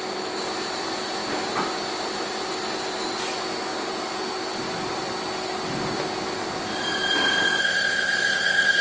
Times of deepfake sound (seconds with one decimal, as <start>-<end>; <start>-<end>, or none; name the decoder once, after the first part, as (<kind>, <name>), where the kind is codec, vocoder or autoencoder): 7.6-8.8 (codec, ZipCodec)